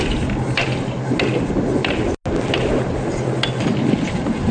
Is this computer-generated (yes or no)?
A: no